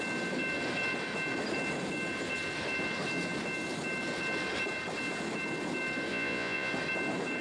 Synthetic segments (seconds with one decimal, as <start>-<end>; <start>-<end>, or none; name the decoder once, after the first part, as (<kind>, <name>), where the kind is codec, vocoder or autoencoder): 6.1-6.7 (vocoder, Vocos)